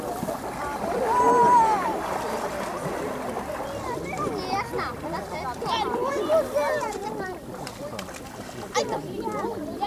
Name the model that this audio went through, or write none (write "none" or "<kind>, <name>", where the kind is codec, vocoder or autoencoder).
none